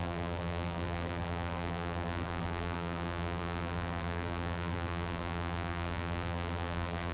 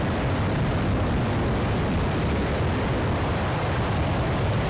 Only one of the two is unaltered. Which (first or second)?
second